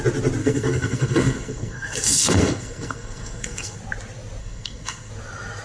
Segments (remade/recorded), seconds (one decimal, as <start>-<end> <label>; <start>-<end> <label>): 0.0-0.4 recorded; 0.4-3.8 remade; 3.8-4.4 recorded; 4.4-5.1 remade; 5.1-5.6 recorded